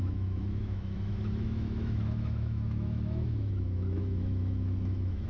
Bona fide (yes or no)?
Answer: no